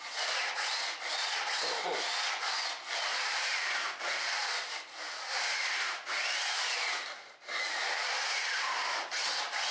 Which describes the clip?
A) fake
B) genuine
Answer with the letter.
B